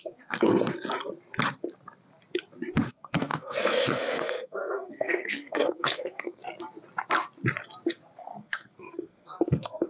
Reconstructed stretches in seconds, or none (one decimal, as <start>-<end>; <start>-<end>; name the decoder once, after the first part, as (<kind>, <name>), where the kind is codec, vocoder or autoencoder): 0.0-0.5 (codec, SNAC); 2.9-6.4; 7.9-9.9